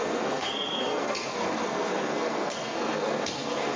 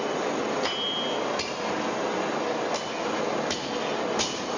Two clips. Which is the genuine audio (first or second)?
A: second